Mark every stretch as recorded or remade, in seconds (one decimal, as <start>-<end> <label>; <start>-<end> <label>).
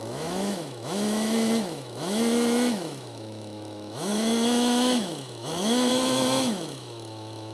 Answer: 0.0-7.5 remade